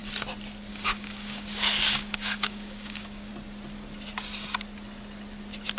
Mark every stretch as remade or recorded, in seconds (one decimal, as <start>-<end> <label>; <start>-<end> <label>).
0.0-0.7 recorded; 0.7-3.3 remade; 3.3-5.8 recorded